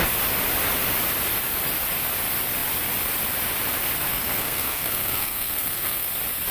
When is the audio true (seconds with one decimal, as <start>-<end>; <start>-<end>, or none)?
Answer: 0.0-4.1; 6.1-6.5